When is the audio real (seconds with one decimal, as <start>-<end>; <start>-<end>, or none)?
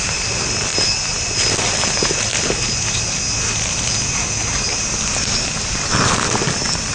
0.0-6.9